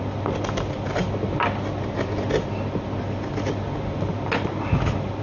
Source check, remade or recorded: recorded